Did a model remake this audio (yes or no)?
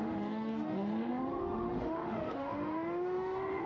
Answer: yes